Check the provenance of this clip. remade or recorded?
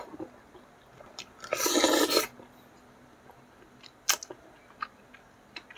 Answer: recorded